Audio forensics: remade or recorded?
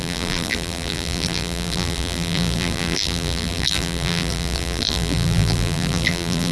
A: remade